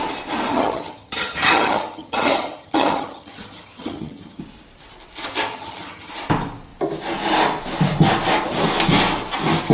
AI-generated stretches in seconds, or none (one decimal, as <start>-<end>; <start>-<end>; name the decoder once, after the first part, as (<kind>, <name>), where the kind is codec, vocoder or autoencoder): 0.5-4.4 (vocoder, HiFi-GAN); 5.5-6.1